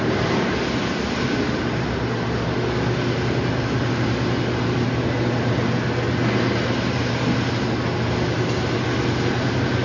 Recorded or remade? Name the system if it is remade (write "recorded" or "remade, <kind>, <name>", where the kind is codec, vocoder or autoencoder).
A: recorded